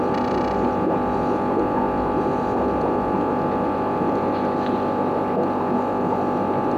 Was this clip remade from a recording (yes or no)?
no